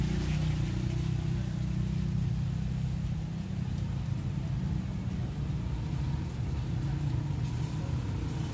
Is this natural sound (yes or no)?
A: yes